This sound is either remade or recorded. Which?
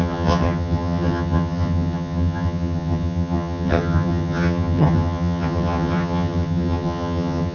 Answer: remade